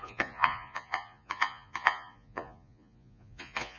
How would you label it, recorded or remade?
remade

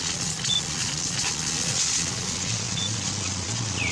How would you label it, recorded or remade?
remade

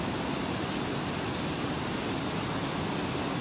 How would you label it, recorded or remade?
recorded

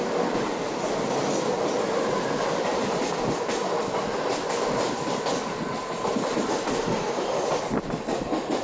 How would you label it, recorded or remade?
recorded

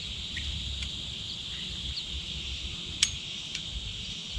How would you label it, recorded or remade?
recorded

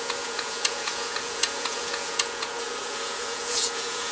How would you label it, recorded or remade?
remade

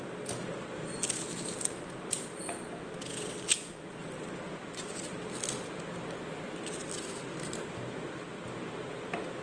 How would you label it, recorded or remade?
recorded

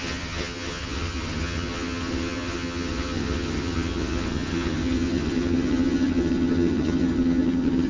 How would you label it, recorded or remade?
remade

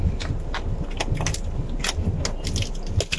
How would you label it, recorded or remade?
recorded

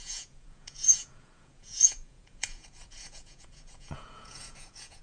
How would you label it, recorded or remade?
remade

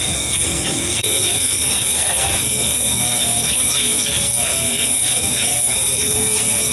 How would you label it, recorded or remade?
remade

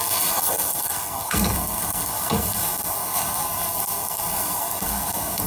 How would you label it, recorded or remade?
remade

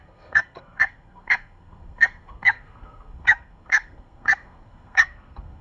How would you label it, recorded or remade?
remade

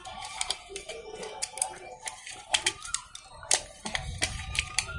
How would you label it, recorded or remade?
remade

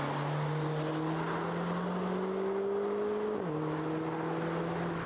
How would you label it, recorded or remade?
recorded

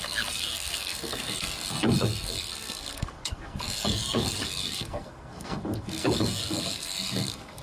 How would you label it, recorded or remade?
remade